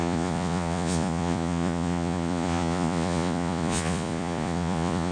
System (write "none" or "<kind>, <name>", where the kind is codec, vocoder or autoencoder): vocoder, Vocos